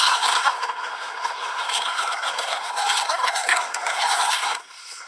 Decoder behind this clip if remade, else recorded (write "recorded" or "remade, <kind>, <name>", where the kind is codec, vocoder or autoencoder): remade, codec, SNAC